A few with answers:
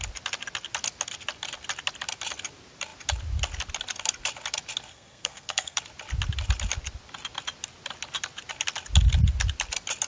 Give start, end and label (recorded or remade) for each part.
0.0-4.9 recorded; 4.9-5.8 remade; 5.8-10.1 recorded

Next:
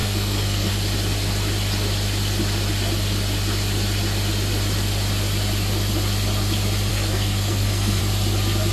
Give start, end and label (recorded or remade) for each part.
0.0-0.7 remade; 0.7-6.9 recorded; 6.9-8.0 remade; 8.0-8.7 recorded